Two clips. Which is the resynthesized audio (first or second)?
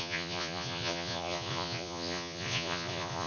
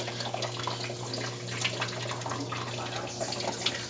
first